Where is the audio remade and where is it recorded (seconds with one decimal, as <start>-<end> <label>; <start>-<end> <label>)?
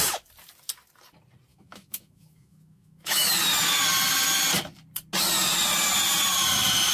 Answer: 0.0-1.5 recorded; 1.5-3.3 remade; 3.3-6.9 recorded